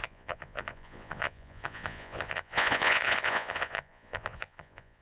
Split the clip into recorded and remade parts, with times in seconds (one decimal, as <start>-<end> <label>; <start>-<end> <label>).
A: 0.0-5.0 remade